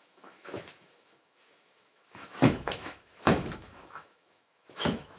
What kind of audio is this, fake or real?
fake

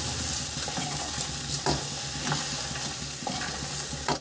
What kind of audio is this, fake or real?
real